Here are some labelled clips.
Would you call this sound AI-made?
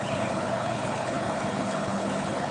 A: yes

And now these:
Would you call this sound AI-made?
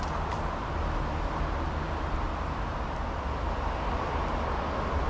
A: no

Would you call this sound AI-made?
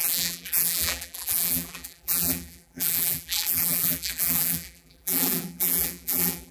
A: yes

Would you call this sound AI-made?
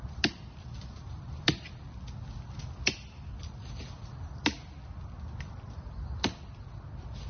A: no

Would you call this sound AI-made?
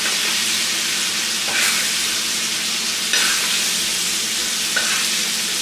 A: no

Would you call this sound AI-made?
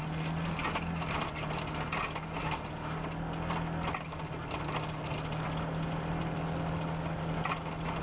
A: no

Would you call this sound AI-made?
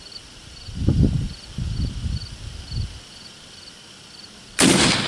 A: no